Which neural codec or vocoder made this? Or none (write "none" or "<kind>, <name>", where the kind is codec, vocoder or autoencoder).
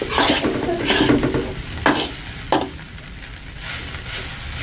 none